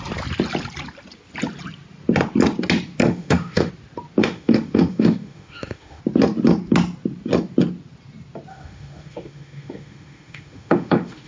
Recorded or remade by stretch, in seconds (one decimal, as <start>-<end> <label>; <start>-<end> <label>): 0.0-3.0 recorded; 3.0-3.7 remade; 3.7-4.2 recorded; 4.2-6.0 remade; 6.0-8.5 recorded; 8.5-11.3 remade